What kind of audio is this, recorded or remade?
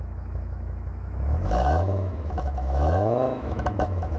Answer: remade